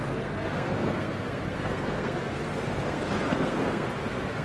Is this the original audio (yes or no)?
no